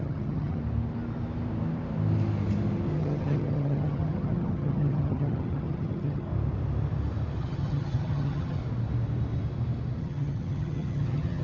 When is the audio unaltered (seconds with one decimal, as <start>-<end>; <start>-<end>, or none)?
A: 0.6-3.0; 6.3-7.4; 8.6-10.0